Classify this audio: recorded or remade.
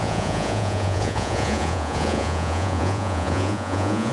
remade